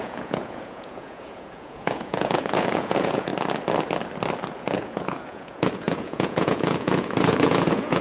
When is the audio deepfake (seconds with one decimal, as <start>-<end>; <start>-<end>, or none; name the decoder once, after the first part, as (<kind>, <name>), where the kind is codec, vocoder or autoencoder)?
0.0-3.3 (vocoder, Vocos); 4.6-8.0